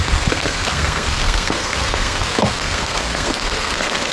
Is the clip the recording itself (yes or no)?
no